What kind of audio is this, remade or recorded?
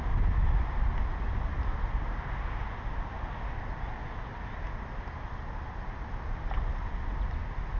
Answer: recorded